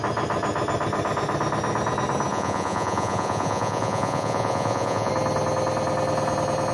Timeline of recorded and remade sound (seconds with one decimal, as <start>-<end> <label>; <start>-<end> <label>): 0.0-2.3 recorded; 2.3-5.1 remade; 5.1-6.7 recorded